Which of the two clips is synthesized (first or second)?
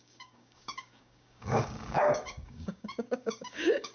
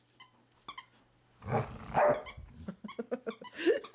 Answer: first